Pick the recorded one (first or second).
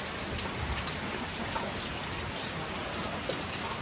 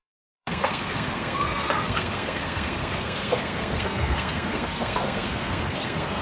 first